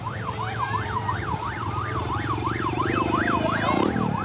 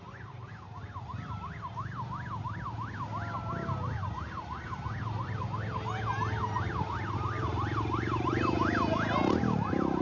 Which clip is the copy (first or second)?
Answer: first